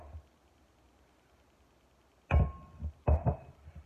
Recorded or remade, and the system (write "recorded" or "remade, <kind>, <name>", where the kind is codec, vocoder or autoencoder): recorded